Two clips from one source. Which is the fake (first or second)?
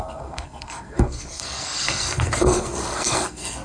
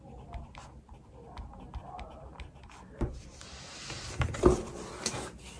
first